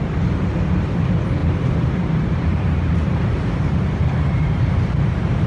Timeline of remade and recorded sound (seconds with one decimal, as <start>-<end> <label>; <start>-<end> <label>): 0.0-1.4 recorded; 1.4-4.1 remade; 4.1-5.5 recorded